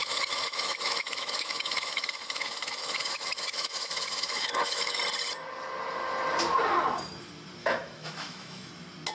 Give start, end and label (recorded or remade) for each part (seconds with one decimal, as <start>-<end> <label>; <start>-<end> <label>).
0.0-5.0 remade; 5.0-7.6 recorded; 7.6-8.7 remade; 8.7-9.1 recorded